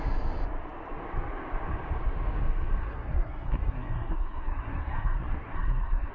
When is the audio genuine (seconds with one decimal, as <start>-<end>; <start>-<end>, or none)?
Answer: 0.0-2.8